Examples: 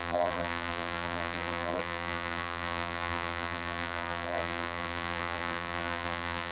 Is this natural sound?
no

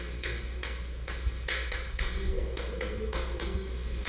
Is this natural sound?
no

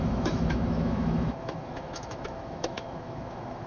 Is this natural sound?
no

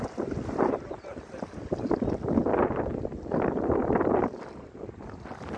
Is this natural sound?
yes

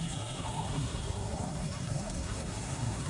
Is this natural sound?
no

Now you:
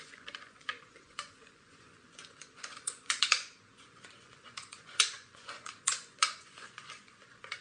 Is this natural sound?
no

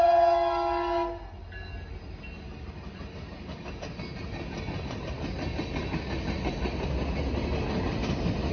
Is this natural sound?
yes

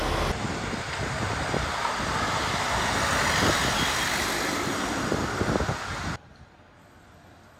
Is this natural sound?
yes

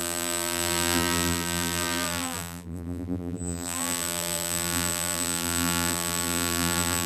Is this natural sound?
no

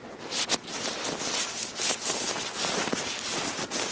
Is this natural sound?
yes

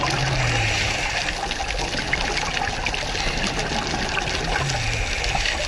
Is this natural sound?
yes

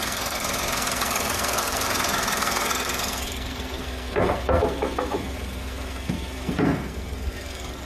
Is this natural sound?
no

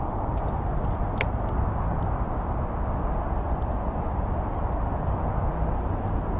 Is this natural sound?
yes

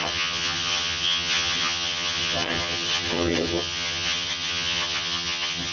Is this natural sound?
no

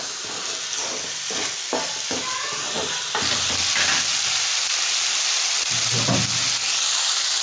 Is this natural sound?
yes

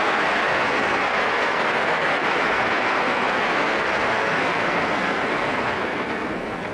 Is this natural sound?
no